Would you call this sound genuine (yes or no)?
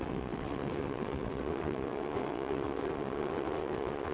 no